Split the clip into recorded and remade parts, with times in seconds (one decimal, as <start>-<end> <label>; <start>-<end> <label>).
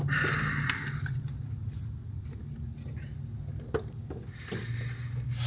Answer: 0.0-5.5 recorded